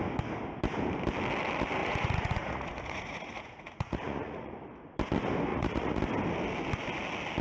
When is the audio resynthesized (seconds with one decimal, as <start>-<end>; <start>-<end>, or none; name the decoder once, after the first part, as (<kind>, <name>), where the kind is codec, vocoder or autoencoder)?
1.8-4.5 (vocoder, Vocos); 5.5-6.0